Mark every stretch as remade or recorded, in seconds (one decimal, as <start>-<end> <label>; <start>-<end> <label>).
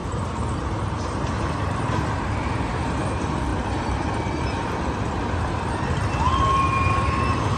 0.0-3.1 remade; 3.1-7.6 recorded